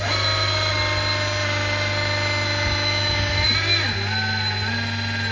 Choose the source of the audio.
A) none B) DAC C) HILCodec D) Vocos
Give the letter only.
A